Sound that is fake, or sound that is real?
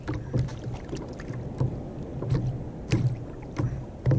real